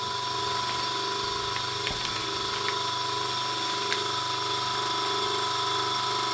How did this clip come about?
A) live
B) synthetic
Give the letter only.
A